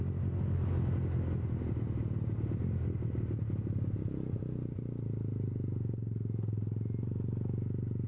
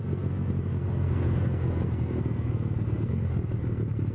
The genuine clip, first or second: first